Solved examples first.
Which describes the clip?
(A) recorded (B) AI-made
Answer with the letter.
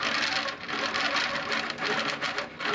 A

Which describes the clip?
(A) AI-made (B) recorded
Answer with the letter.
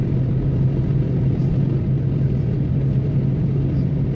B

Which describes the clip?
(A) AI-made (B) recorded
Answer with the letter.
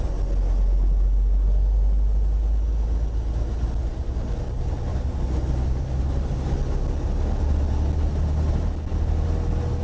B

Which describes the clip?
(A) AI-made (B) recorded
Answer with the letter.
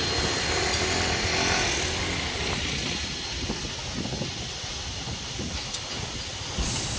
B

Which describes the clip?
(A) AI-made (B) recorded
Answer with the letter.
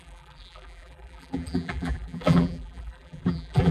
A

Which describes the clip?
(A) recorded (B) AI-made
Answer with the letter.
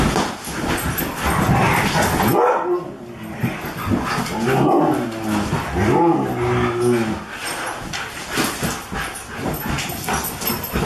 A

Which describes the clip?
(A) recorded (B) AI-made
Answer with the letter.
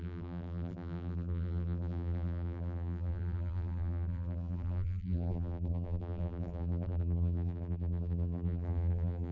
B